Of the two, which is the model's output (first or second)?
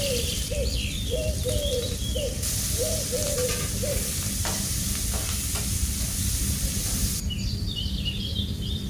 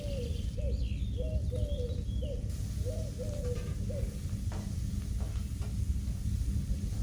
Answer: first